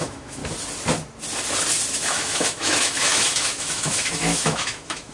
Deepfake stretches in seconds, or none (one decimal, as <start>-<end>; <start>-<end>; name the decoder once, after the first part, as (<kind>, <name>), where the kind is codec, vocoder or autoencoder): 0.0-0.4 (autoencoder, DAC-VAE); 1.9-5.1